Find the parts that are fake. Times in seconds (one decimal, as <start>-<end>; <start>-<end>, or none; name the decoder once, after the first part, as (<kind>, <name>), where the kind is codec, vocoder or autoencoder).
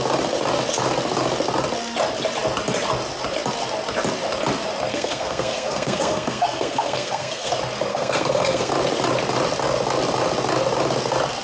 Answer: 4.9-7.5 (codec, SNAC); 7.9-8.7